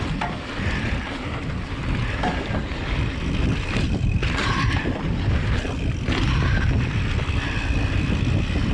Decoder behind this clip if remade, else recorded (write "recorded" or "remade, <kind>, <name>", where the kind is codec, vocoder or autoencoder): recorded